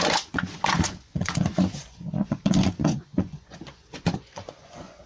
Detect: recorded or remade remade